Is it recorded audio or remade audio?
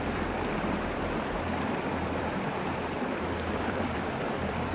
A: remade